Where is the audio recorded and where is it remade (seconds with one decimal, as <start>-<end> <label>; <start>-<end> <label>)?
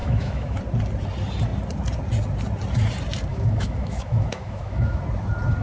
0.0-0.6 remade; 0.6-3.3 recorded; 3.3-5.0 remade; 5.0-5.6 recorded